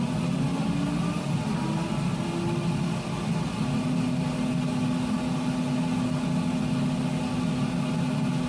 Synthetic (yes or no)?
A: no